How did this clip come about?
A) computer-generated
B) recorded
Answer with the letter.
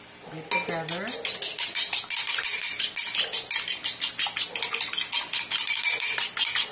B